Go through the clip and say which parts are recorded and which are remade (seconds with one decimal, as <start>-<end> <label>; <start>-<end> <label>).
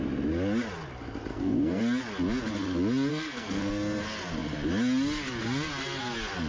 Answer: 0.0-1.3 recorded; 1.3-1.8 remade; 1.8-3.1 recorded; 3.1-3.7 remade; 3.7-6.5 recorded